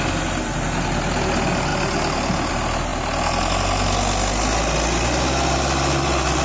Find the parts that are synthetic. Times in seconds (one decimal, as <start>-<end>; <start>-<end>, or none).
none